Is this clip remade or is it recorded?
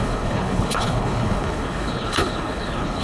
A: remade